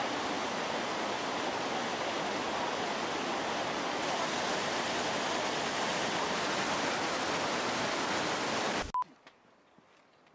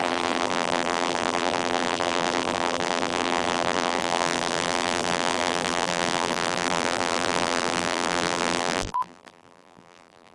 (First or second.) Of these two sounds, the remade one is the second